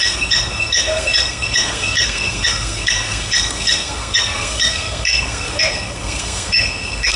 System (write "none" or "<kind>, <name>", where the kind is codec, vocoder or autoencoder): codec, SNAC